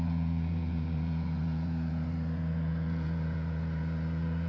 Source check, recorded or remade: remade